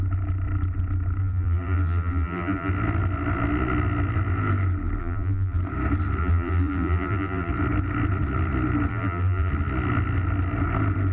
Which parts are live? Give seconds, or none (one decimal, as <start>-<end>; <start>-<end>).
0.0-1.2; 2.7-5.0; 5.6-6.2; 7.5-8.9; 9.5-11.1